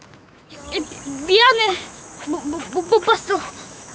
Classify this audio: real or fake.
fake